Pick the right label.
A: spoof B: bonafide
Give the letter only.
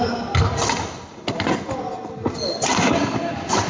B